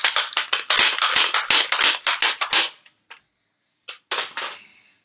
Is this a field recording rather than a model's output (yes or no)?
yes